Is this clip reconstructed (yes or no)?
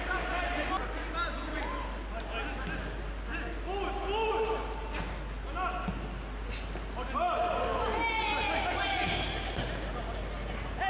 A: no